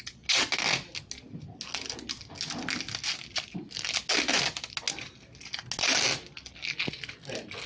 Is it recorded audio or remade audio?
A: recorded